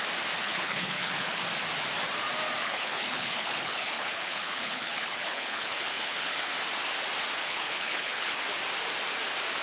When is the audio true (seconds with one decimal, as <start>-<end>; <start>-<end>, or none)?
0.0-0.4; 1.4-2.6; 6.5-7.4; 8.4-9.6